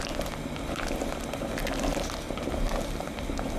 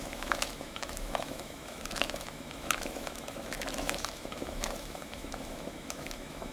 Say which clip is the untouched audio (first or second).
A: first